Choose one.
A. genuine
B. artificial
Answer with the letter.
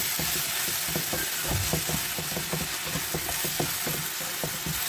A